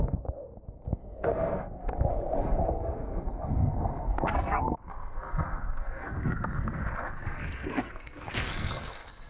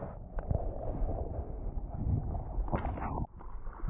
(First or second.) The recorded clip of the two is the second